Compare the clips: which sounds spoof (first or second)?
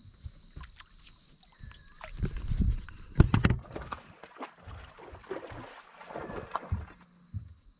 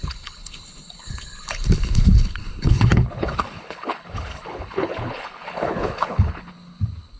second